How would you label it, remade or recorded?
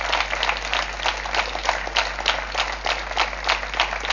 recorded